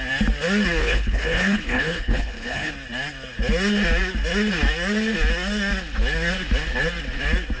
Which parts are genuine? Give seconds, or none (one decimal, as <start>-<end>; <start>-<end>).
0.0-0.8; 2.7-7.6

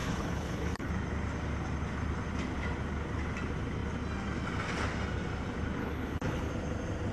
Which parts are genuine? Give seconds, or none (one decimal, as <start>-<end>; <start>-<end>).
0.9-5.8; 6.5-7.1

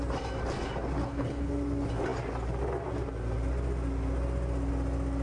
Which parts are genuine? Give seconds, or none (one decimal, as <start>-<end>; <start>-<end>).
0.0-1.0; 1.5-5.2

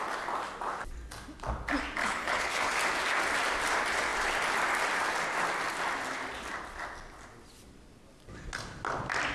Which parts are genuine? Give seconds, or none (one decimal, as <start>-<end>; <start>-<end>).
0.0-2.0; 2.7-9.3

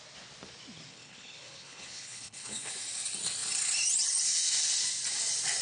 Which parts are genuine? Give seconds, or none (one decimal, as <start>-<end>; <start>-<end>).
0.0-0.9; 2.7-5.6

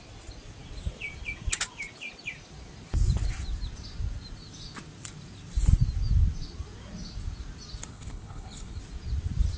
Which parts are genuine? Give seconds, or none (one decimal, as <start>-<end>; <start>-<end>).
0.0-7.9; 8.8-9.6